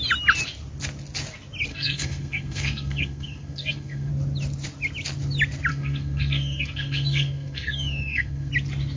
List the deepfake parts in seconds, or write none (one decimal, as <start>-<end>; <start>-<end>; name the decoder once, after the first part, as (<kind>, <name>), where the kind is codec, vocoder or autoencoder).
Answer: 1.7-4.1 (codec, SNAC); 5.7-8.5